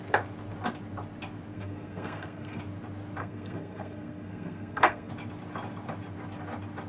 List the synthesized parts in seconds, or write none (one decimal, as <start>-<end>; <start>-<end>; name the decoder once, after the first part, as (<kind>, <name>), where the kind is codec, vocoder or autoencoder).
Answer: 1.5-2.6 (codec, SNAC); 3.2-5.1